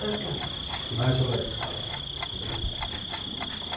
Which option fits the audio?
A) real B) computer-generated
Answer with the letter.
A